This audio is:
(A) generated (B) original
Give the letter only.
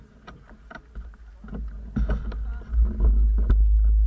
B